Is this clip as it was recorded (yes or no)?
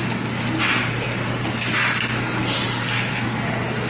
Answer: yes